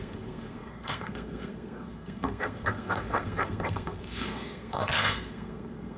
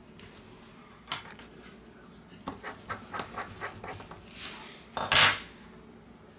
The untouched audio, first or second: second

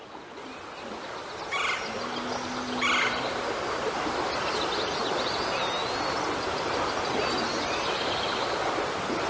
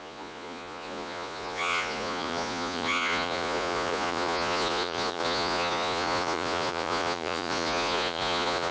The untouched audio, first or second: first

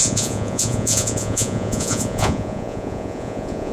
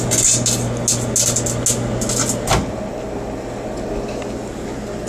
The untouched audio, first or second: second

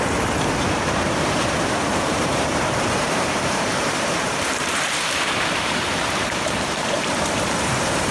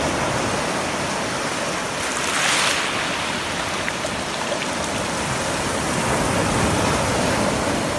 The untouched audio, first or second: second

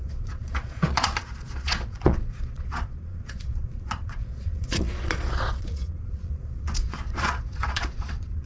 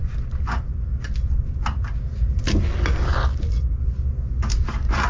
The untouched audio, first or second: second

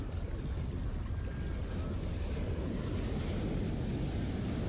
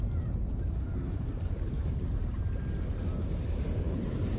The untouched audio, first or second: first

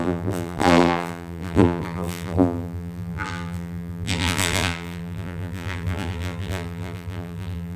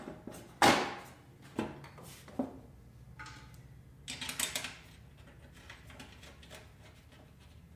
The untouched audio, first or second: second